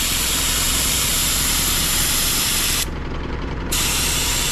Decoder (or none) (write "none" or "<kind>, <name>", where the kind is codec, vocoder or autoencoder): vocoder, BigVGAN v2